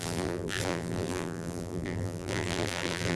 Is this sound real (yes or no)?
no